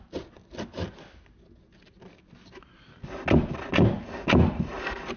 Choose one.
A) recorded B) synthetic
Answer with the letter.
A